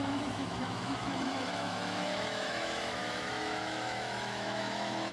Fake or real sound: fake